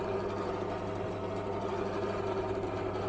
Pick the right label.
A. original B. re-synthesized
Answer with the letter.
A